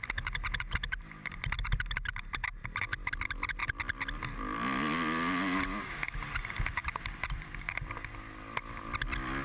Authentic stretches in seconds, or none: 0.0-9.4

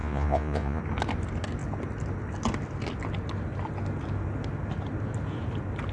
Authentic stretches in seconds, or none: 0.8-5.9

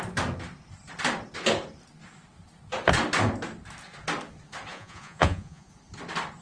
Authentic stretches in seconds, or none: 0.0-4.7; 5.7-6.4

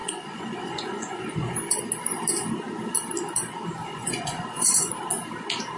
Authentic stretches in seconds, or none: 1.8-3.8; 4.9-5.8

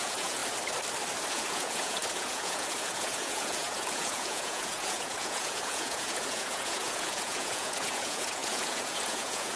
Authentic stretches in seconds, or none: 0.4-1.3